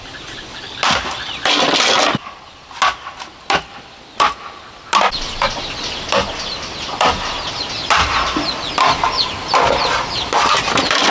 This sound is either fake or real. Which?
real